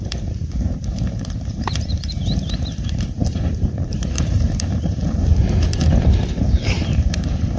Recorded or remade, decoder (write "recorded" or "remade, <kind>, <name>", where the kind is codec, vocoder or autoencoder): remade, vocoder, BigVGAN v2